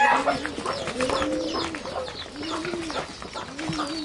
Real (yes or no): yes